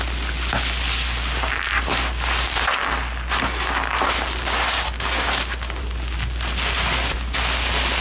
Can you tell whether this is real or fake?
real